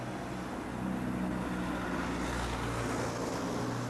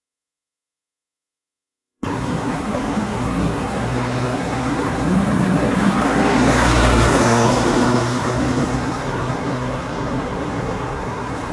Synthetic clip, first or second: second